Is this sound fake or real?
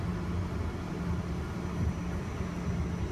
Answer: real